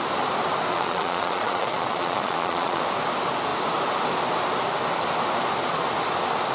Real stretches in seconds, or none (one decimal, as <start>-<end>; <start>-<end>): 0.0-0.7; 2.8-6.5